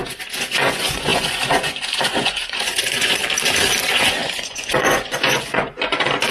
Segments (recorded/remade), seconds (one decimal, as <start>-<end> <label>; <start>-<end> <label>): 0.0-3.2 remade; 3.2-3.8 recorded; 3.8-6.3 remade